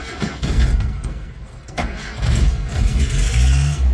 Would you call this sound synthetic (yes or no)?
yes